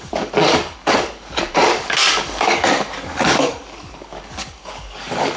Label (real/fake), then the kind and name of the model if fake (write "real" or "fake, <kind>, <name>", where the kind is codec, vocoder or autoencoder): fake, codec, DAC